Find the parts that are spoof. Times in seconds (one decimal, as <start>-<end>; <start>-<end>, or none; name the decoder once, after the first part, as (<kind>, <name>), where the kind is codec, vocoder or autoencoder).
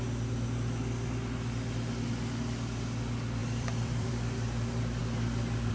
3.4-4.1 (vocoder, BigVGAN v2)